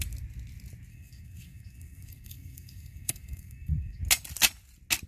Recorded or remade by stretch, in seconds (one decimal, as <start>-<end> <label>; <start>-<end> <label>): 0.0-0.9 recorded; 0.9-4.0 remade; 4.0-5.1 recorded